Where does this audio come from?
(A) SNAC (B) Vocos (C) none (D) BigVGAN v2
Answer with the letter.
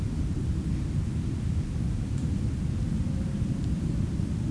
C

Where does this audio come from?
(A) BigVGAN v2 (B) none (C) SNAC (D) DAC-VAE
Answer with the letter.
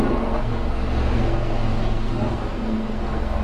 C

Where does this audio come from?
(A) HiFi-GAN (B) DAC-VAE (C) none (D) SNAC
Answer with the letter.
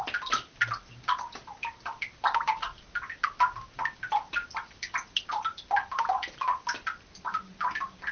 C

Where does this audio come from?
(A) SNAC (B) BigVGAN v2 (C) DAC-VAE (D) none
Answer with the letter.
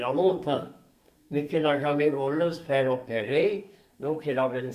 A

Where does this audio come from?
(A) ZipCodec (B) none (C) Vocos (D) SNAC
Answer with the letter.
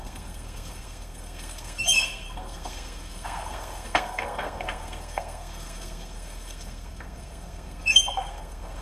D